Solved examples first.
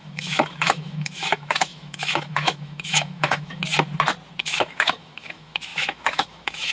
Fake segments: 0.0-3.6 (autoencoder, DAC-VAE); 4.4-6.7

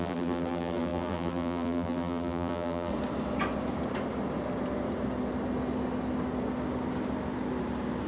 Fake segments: 0.0-2.9 (vocoder, BigVGAN v2)

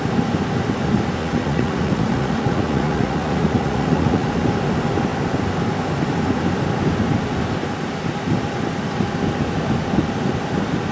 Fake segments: 1.2-4.3 (vocoder, Vocos)

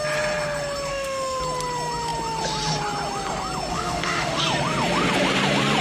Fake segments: 0.9-1.4 (autoencoder, DAC-VAE); 3.7-4.4

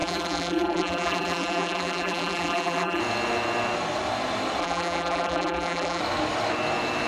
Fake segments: 0.0-3.0 (vocoder, BigVGAN v2); 4.6-6.0